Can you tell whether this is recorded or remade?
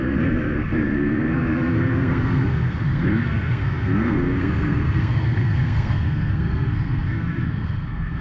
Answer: remade